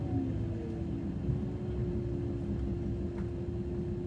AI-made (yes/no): no